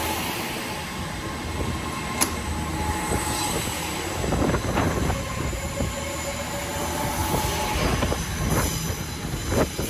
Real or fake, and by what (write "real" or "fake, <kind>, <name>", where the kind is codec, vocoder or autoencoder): real